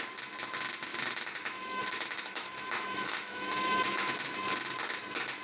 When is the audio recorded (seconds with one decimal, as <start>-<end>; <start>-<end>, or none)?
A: 0.0-0.9; 4.1-5.4